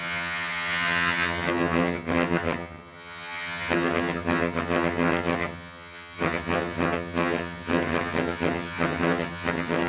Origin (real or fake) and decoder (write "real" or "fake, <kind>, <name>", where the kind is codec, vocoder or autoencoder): fake, vocoder, HiFi-GAN